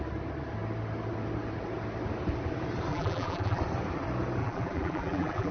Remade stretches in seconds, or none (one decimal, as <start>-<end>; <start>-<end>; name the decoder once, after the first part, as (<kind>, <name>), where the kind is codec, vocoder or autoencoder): 2.9-3.6 (vocoder, BigVGAN v2); 4.4-5.5